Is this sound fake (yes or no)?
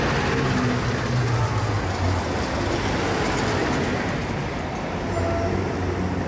no